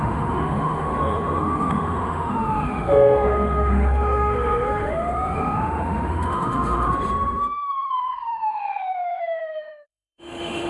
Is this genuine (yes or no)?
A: no